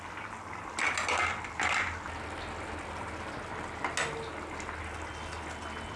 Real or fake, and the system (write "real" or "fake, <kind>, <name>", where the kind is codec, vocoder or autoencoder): real